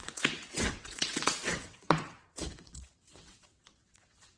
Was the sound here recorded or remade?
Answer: remade